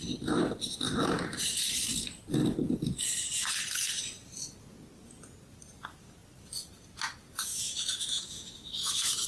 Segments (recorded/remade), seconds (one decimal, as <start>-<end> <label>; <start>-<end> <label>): 0.0-7.5 recorded; 7.5-9.3 remade